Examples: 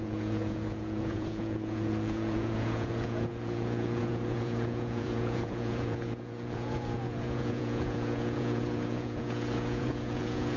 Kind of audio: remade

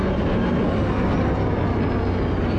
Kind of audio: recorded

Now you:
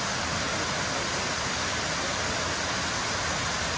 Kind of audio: recorded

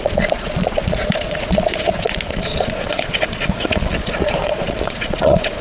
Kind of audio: remade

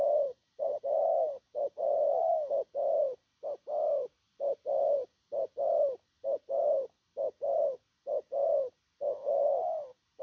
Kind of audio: recorded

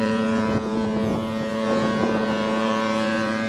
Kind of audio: remade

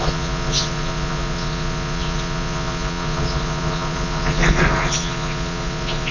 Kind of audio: remade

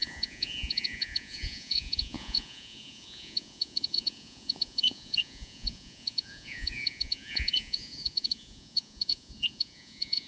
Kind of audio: remade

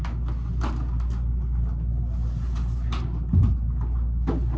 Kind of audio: recorded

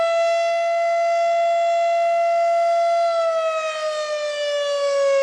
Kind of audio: recorded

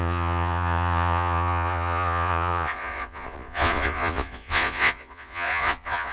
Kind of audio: remade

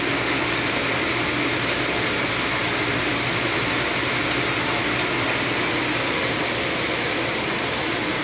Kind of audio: recorded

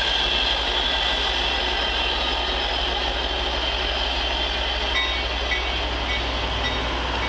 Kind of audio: recorded